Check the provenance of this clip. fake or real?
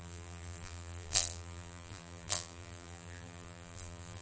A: fake